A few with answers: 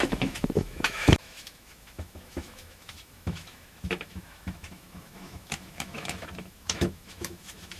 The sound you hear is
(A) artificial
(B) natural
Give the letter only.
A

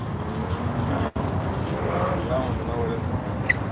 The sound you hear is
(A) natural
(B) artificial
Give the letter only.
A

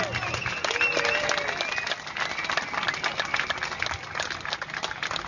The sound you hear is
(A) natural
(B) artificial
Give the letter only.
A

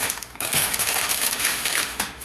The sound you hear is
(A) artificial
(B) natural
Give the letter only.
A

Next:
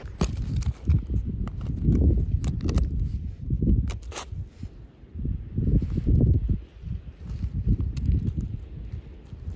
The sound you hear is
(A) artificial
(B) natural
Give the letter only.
B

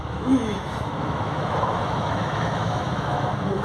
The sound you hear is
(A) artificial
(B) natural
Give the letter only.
A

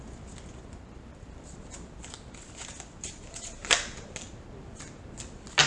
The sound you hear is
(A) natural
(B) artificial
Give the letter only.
A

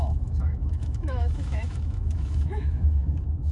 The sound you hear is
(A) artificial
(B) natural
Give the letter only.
A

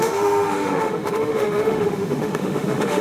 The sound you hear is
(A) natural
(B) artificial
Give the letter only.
B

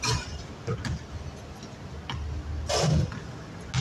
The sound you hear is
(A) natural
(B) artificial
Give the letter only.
A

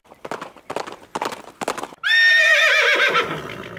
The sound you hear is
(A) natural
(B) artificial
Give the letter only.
A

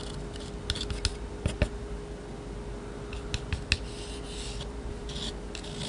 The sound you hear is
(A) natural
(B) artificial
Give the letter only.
A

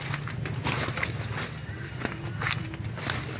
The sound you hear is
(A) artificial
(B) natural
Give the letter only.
B